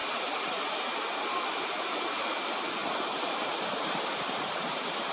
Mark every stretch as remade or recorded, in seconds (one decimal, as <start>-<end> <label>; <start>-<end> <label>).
0.0-2.8 recorded; 2.8-5.1 remade